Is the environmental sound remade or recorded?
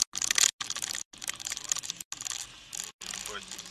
recorded